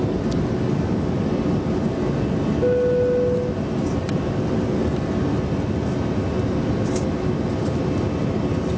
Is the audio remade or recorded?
recorded